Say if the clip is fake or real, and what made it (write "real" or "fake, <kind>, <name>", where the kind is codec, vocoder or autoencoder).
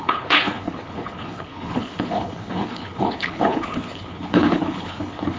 fake, codec, HILCodec